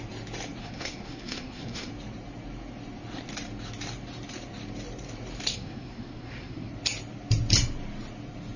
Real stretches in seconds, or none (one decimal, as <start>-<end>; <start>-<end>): 0.0-0.6; 1.9-5.5; 6.7-8.6

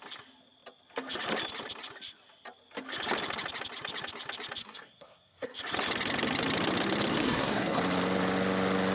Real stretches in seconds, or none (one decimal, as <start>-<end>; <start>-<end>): 0.0-4.6; 5.6-7.1; 7.8-8.9